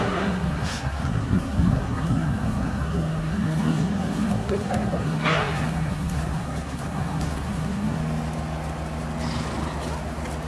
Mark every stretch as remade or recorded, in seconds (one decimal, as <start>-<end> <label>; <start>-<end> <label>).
0.0-8.0 remade; 8.0-10.5 recorded

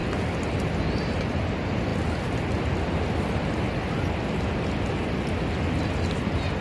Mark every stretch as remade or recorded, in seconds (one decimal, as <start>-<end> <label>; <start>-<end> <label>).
0.0-6.6 recorded